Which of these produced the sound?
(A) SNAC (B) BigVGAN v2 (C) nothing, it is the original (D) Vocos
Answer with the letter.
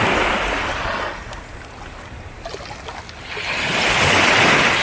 C